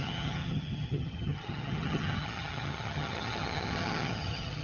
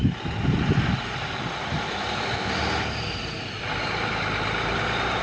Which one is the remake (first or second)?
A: first